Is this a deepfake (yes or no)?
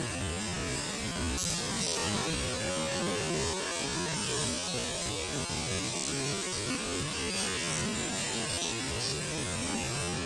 no